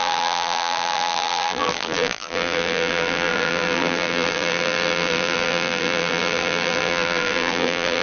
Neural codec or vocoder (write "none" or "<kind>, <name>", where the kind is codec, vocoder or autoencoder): vocoder, BigVGAN v2